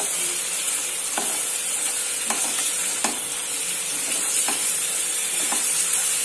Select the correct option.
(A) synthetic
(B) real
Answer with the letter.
A